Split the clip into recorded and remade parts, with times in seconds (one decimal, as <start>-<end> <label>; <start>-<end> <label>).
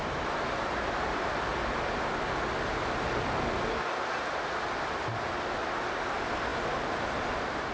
0.0-1.5 remade; 1.5-6.1 recorded; 6.1-7.7 remade